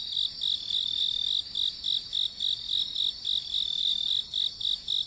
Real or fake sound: real